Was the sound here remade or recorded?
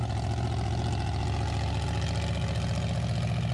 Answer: recorded